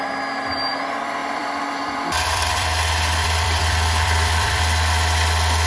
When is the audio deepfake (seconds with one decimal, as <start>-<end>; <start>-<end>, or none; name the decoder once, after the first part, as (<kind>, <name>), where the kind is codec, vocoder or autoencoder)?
1.2-4.6 (vocoder, BigVGAN v2)